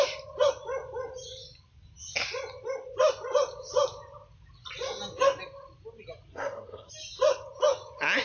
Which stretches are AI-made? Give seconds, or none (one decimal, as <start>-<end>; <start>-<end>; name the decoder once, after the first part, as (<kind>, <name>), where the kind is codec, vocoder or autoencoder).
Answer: 6.3-6.9 (codec, SNAC)